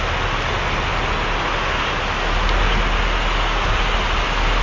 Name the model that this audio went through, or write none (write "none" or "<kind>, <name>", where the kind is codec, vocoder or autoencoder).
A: none